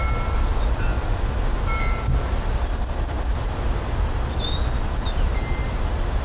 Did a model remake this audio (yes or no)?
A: no